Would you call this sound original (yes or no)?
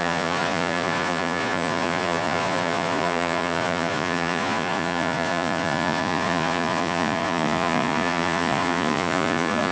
no